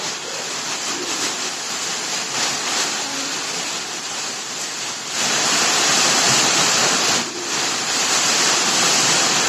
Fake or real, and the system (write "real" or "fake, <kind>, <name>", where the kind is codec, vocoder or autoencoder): fake, vocoder, BigVGAN v2